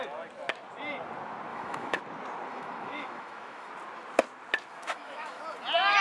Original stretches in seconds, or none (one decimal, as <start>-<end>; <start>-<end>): 0.0-1.5; 2.0-2.5; 3.7-4.7; 5.4-6.0

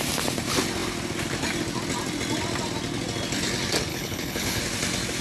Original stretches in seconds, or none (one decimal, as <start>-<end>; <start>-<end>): 0.0-3.9; 4.6-5.2

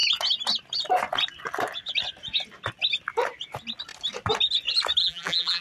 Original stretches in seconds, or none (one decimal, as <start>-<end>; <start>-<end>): 0.0-5.0